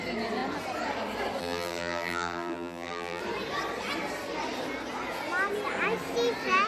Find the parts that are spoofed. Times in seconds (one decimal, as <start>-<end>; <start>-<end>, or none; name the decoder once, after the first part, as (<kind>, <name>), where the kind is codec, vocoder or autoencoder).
1.4-3.2 (vocoder, BigVGAN v2)